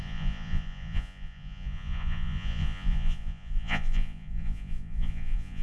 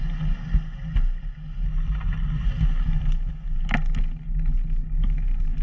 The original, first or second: second